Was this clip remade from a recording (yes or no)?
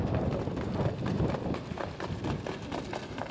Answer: no